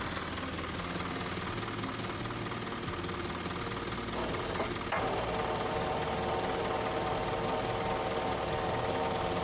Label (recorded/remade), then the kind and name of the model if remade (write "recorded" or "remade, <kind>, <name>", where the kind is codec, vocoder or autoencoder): recorded